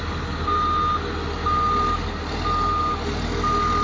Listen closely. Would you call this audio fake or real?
real